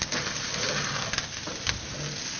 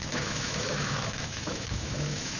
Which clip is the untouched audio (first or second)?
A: first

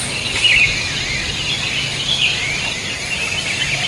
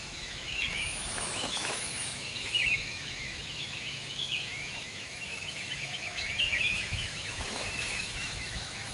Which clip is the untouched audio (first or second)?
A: first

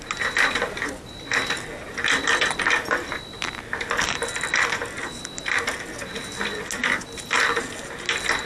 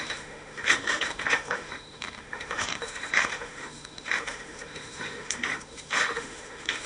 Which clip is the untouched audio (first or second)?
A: first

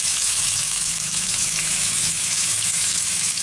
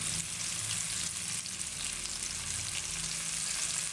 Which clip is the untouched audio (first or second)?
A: second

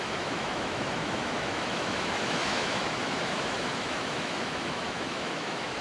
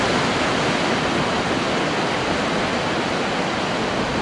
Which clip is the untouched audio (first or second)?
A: second